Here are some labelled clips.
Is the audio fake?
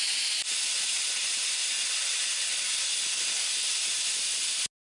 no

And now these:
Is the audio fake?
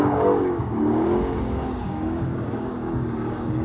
yes